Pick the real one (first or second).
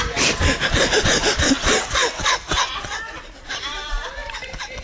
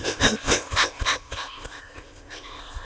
first